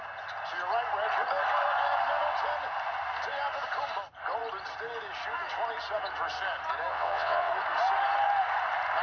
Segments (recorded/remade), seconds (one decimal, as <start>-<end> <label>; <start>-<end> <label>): 0.0-6.9 recorded; 6.9-7.5 remade; 7.5-9.0 recorded